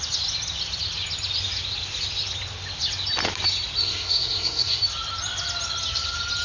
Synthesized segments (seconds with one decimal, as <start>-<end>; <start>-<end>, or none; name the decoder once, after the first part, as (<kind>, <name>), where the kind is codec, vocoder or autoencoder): 3.8-4.8 (codec, SNAC)